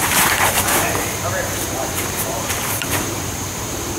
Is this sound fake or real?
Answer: fake